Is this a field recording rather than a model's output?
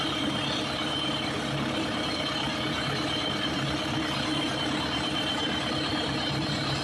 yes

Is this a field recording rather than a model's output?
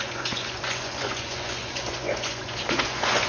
no